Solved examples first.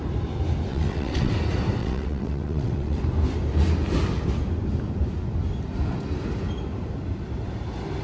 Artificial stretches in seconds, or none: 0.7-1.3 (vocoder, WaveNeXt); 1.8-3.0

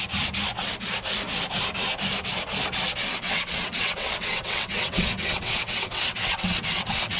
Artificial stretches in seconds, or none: 3.1-7.2 (vocoder, WaveNeXt)

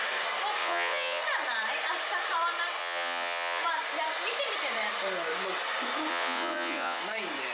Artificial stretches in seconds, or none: 0.6-1.2 (vocoder, WaveNeXt); 2.8-3.6; 6.1-7.0

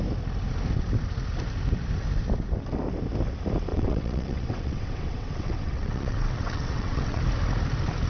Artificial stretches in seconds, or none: 3.7-7.2 (vocoder, WaveNeXt)

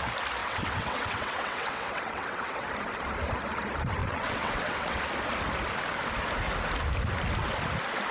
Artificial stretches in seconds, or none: 0.4-2.7 (vocoder, WaveNeXt); 4.0-5.0

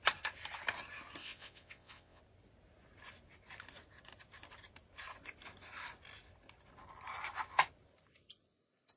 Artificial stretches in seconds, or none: 1.2-2.2 (vocoder, WaveNeXt)